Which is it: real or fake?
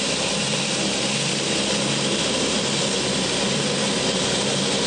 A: real